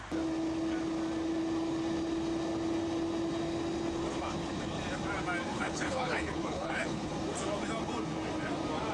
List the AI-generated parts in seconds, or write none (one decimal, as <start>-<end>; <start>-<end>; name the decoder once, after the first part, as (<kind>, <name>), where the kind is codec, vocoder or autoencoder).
5.5-7.1 (codec, HILCodec)